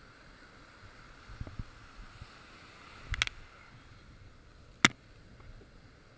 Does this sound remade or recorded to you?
recorded